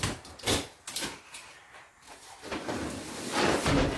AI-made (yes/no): no